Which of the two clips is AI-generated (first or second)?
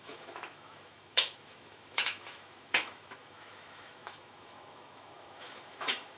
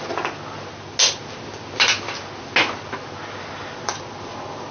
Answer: first